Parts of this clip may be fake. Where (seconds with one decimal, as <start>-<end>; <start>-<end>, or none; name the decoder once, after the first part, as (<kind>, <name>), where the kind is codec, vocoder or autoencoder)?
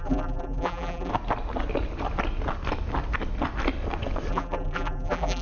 0.0-1.1 (vocoder, BigVGAN v2); 4.3-5.4